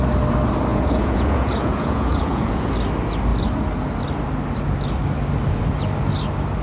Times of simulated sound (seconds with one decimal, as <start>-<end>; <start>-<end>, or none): 0.7-2.7